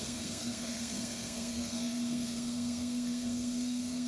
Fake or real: fake